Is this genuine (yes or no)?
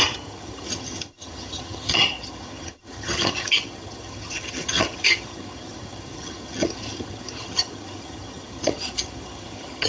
no